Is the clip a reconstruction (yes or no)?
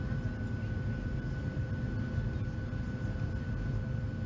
no